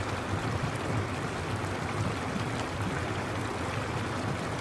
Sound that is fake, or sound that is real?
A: real